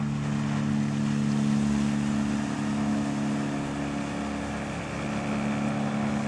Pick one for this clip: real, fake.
real